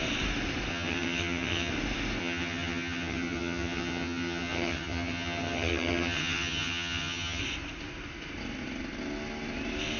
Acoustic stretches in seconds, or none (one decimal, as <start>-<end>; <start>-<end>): 0.0-0.7; 1.7-2.2; 7.4-10.0